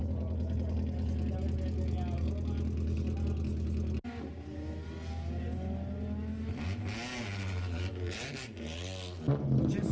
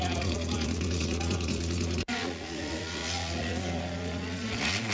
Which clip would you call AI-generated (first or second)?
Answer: second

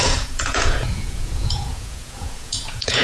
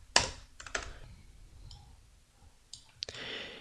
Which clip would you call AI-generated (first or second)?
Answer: first